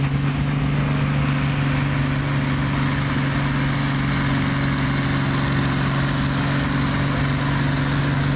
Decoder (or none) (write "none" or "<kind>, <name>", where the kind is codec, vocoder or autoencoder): none